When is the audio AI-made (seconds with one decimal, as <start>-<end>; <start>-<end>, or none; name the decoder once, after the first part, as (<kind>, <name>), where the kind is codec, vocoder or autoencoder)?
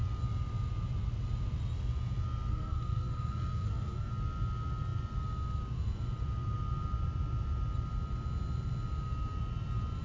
2.5-4.1 (codec, SNAC)